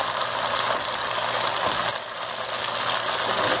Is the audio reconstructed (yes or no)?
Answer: no